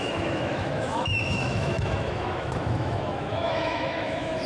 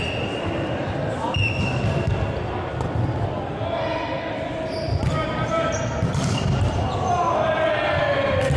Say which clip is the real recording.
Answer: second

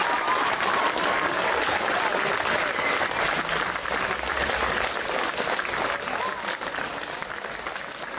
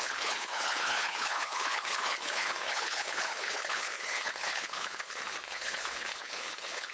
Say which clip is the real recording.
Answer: first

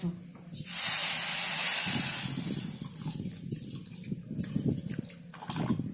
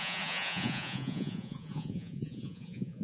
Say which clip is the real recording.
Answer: first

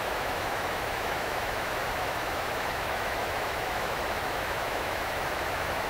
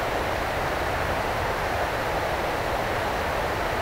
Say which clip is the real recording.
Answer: second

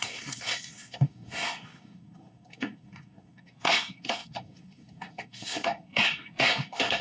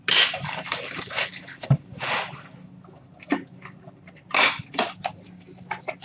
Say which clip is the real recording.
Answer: second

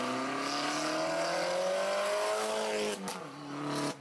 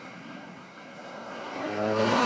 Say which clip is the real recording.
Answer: first